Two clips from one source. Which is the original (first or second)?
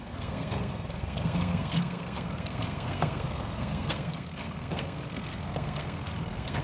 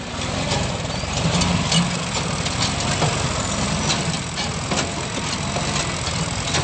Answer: second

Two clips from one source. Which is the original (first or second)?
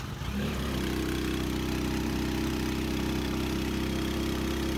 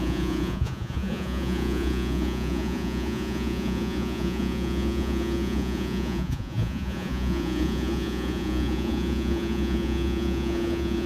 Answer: first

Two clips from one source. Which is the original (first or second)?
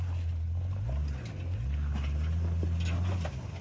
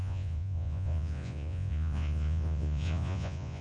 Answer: first